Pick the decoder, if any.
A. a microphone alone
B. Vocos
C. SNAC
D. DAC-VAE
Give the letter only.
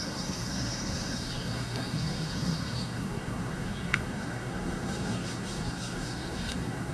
C